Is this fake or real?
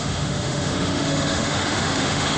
fake